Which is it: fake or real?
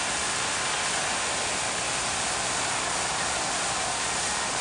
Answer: real